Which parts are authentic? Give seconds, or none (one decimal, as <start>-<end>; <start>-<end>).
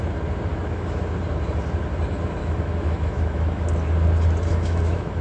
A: 0.0-0.5; 1.0-2.4; 3.6-4.5